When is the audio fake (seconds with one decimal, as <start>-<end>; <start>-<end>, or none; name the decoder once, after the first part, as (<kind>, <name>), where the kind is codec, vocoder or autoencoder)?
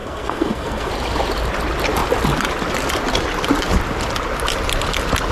0.0-0.9 (codec, SNAC)